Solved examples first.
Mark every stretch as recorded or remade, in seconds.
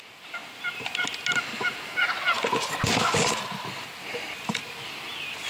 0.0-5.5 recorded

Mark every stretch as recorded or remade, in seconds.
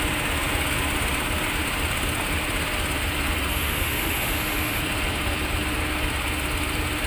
0.0-3.5 recorded; 3.5-4.8 remade; 4.8-7.1 recorded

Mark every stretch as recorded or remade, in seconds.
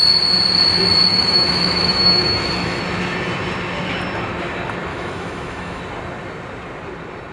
0.0-1.1 recorded; 1.1-2.8 remade; 2.8-4.9 recorded; 4.9-5.8 remade; 5.8-7.3 recorded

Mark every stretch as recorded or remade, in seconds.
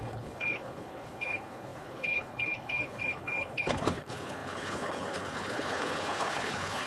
0.0-6.9 remade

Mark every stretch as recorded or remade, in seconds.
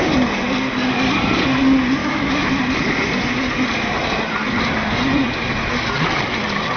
0.0-2.0 recorded; 2.0-2.5 remade; 2.5-6.8 recorded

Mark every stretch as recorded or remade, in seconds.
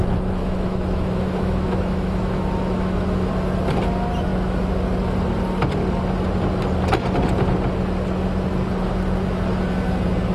0.0-0.4 recorded; 0.4-3.3 remade; 3.3-10.3 recorded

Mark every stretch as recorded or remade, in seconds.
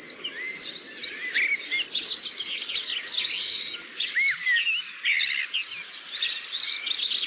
0.0-7.3 recorded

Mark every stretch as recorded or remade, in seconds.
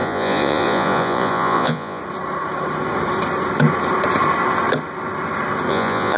0.0-2.0 remade; 2.0-5.7 recorded; 5.7-6.2 remade